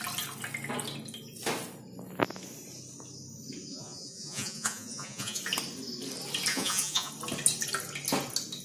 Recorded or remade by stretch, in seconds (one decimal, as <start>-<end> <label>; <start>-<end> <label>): 0.0-3.7 recorded; 3.7-5.4 remade; 5.4-6.5 recorded; 6.5-7.1 remade; 7.1-8.6 recorded